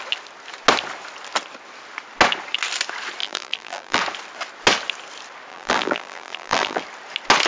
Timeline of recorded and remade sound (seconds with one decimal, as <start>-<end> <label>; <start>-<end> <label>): 0.0-3.2 recorded; 3.2-4.0 remade; 4.0-5.5 recorded; 5.5-6.8 remade; 6.8-7.5 recorded